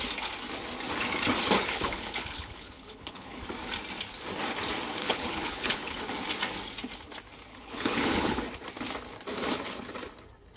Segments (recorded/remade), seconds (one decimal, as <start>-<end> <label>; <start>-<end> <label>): 0.0-1.6 recorded; 1.6-3.4 remade; 3.4-5.0 recorded; 5.0-6.0 remade; 6.0-7.5 recorded; 7.5-8.4 remade; 8.4-10.6 recorded